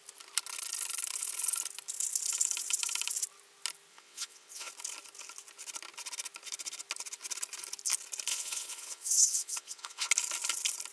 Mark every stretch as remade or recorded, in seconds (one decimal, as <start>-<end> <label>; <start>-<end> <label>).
0.0-3.9 recorded; 3.9-4.7 remade; 4.7-8.3 recorded; 8.3-10.1 remade; 10.1-10.9 recorded